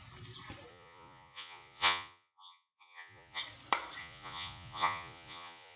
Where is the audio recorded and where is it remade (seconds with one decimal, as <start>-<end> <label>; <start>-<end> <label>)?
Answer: 0.0-0.7 recorded; 0.7-3.4 remade; 3.4-4.0 recorded; 4.0-5.8 remade